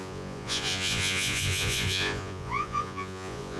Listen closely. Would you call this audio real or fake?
fake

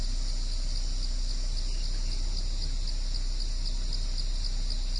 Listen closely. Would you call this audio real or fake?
real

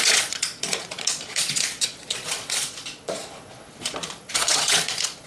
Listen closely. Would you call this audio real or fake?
fake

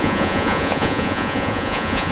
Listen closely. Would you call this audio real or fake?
fake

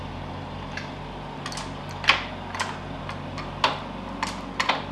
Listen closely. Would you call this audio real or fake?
real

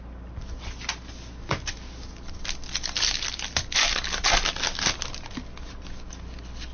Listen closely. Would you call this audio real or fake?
real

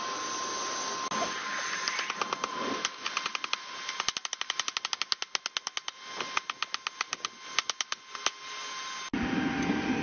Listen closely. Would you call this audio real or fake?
real